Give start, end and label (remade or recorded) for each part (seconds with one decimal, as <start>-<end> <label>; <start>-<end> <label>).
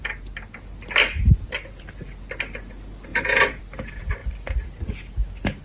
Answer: 0.0-3.1 recorded; 3.1-3.6 remade; 3.6-5.6 recorded